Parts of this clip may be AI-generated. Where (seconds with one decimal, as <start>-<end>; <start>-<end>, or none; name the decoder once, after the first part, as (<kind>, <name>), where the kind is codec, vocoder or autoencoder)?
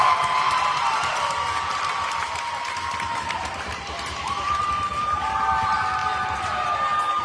none